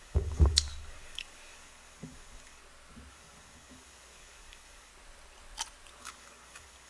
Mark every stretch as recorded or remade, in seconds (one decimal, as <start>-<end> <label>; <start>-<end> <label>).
0.0-2.6 remade; 2.6-3.1 recorded; 3.1-4.9 remade; 4.9-6.0 recorded; 6.0-6.9 remade